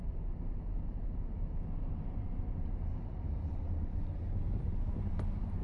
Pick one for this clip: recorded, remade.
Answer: remade